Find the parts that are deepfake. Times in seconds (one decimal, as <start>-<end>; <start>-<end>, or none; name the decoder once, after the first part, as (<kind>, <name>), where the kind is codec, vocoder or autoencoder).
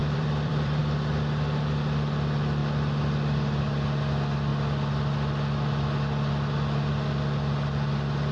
0.0-0.8 (vocoder, BigVGAN v2)